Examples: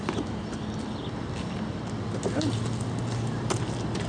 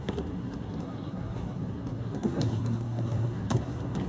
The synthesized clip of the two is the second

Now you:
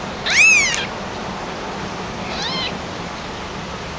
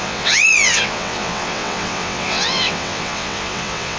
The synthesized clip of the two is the second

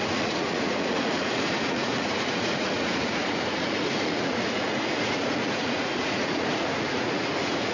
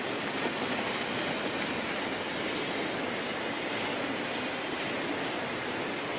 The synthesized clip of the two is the first